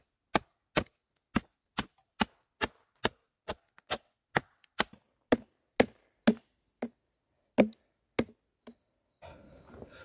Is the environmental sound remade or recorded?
recorded